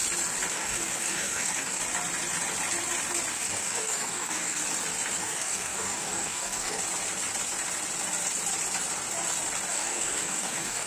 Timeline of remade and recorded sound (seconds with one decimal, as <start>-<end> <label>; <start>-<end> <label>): 0.0-0.5 recorded; 0.5-1.8 remade; 1.8-3.3 recorded; 3.3-4.6 remade; 4.6-5.2 recorded; 5.2-6.8 remade; 6.8-9.7 recorded; 9.7-10.9 remade